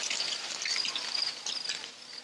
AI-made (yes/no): no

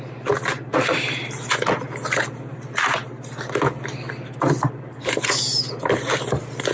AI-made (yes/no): no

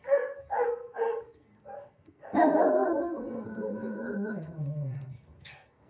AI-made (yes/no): yes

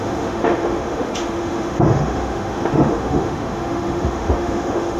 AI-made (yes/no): yes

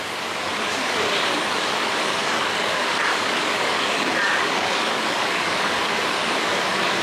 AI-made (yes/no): yes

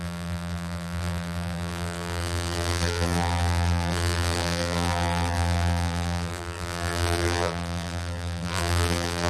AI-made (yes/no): yes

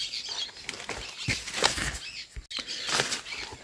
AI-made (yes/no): no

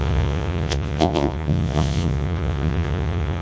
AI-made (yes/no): yes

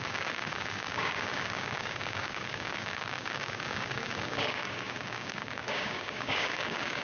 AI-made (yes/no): yes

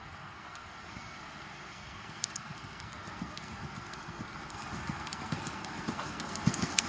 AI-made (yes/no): yes